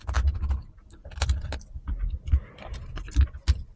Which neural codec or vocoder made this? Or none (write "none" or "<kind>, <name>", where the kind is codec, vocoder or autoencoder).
none